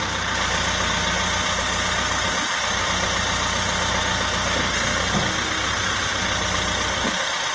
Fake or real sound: real